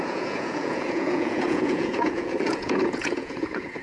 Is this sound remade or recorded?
remade